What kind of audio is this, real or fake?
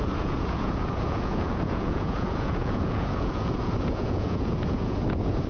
fake